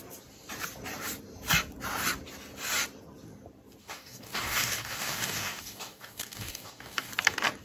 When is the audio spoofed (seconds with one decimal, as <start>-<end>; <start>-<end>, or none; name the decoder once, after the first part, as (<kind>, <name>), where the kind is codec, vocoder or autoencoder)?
3.8-7.1 (codec, DAC)